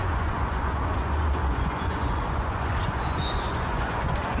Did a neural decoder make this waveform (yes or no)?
yes